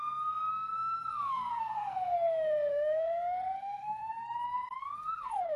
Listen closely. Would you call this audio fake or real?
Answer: fake